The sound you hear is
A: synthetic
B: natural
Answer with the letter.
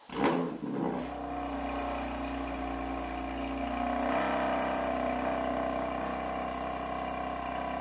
B